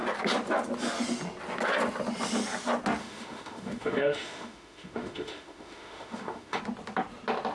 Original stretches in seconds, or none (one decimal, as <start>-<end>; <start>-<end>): 0.0-3.0; 6.6-7.5